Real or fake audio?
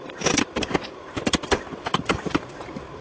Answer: fake